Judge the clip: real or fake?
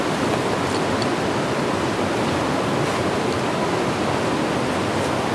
real